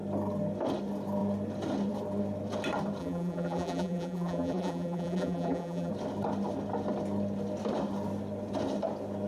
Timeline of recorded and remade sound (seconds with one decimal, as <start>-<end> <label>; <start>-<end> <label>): 0.0-3.0 recorded; 3.0-5.9 remade; 5.9-9.3 recorded

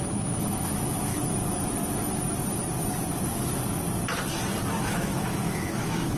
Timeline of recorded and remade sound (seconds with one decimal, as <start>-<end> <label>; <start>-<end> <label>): 0.0-1.1 remade; 1.1-4.8 recorded; 4.8-6.2 remade

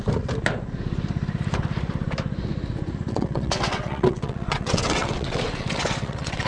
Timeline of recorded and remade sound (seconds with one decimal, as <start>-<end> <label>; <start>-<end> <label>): 0.0-3.1 recorded; 3.1-6.5 remade

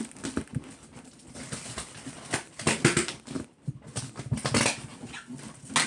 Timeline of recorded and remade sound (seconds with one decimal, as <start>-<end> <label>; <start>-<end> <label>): 0.0-5.9 recorded

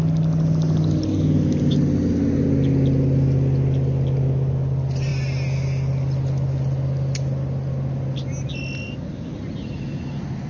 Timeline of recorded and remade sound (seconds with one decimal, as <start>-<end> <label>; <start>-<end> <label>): 0.0-10.5 recorded